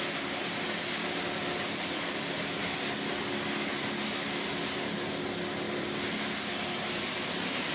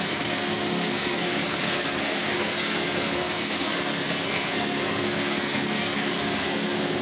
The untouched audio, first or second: first